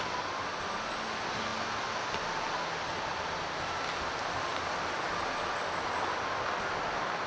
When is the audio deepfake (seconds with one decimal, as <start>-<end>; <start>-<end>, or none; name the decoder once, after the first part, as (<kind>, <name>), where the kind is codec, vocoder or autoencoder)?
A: none